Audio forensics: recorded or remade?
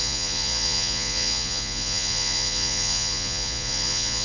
remade